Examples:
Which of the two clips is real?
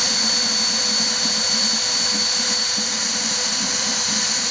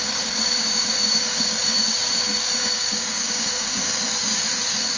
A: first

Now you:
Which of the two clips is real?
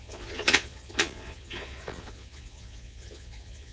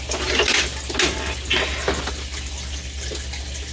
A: second